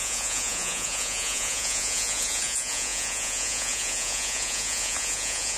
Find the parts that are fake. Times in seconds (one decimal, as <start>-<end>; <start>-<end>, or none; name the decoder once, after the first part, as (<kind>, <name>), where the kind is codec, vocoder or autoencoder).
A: 0.0-5.6 (vocoder, Vocos)